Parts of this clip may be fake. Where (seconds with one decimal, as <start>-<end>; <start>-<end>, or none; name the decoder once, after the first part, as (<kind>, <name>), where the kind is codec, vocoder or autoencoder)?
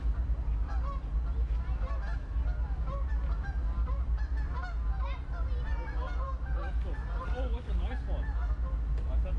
none